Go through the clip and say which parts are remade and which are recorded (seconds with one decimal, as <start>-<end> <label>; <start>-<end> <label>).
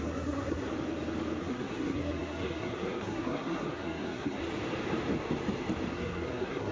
0.0-0.7 remade; 0.7-1.4 recorded; 1.4-4.4 remade; 4.4-5.9 recorded; 5.9-6.7 remade